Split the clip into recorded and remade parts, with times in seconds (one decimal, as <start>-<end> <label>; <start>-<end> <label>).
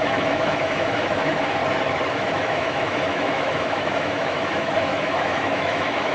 0.0-1.6 remade; 1.6-2.1 recorded; 2.1-6.1 remade